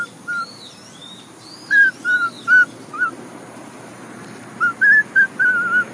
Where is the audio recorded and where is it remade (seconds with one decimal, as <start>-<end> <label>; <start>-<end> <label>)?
0.0-1.0 recorded; 1.0-4.5 remade; 4.5-5.9 recorded